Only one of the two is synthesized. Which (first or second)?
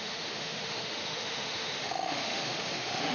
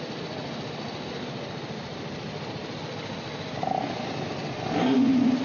first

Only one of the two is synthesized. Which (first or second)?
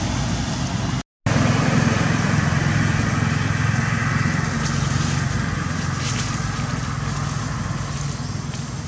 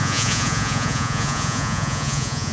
second